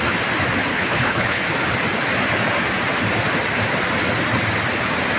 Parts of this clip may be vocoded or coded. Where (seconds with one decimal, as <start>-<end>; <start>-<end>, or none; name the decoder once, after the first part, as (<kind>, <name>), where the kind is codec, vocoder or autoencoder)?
0.7-1.4 (codec, HILCodec)